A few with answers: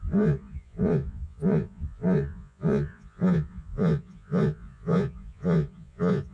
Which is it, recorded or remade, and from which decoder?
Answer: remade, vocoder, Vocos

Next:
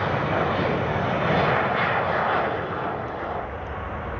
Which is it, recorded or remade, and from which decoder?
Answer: recorded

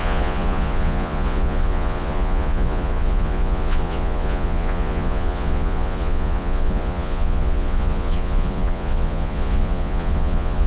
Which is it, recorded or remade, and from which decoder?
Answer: remade, vocoder, Vocos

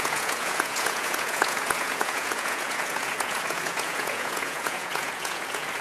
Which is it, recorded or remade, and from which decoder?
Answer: remade, vocoder, Vocos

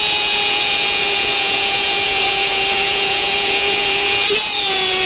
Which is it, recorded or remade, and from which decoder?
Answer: remade, vocoder, Vocos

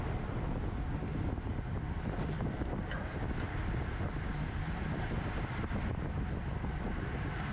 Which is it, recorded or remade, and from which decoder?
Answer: recorded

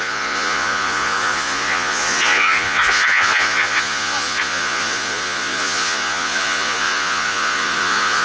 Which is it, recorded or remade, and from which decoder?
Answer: remade, vocoder, Vocos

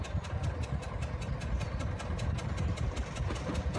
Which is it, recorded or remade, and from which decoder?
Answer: recorded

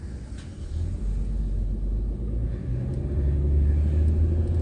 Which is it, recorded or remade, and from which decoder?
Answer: recorded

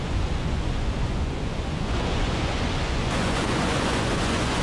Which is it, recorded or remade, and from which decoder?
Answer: remade, vocoder, Vocos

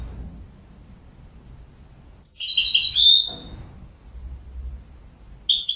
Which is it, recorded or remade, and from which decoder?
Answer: recorded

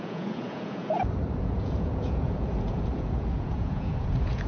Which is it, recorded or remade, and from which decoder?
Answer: remade, vocoder, Vocos